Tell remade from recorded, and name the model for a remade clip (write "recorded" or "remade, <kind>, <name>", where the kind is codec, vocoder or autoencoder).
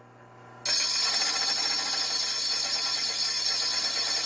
recorded